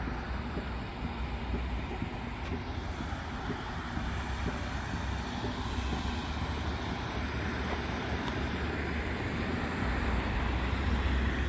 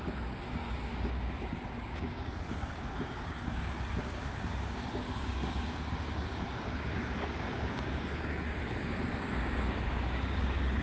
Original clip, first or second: first